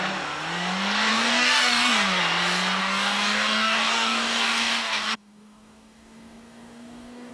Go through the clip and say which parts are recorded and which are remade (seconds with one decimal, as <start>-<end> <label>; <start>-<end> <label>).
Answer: 0.0-1.1 recorded; 1.1-2.2 remade; 2.2-2.8 recorded; 2.8-7.3 remade